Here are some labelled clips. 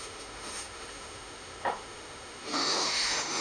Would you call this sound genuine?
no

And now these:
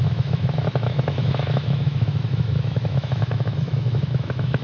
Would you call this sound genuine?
no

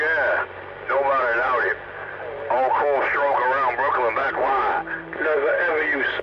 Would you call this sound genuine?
yes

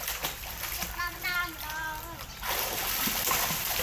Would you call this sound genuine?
yes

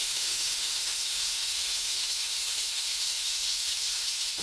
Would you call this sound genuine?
no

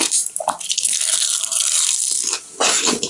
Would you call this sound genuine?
yes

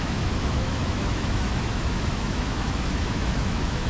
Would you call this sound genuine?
no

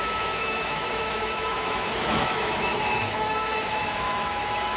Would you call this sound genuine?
no